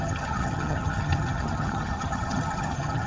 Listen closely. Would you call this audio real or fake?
fake